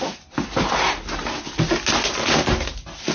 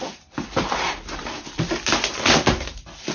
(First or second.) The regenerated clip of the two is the second